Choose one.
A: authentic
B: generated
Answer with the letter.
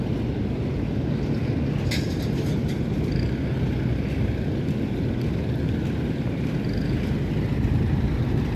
A